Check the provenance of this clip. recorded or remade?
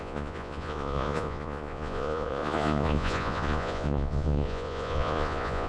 remade